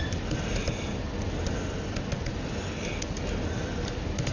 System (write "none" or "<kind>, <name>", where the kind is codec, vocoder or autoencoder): none